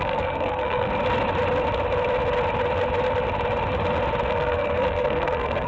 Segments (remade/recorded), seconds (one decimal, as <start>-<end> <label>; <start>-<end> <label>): 0.0-0.9 remade; 0.9-4.3 recorded; 4.3-5.7 remade